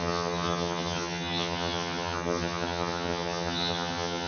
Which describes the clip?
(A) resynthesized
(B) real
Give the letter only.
A